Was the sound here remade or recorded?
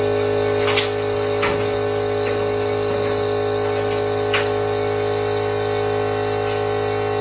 recorded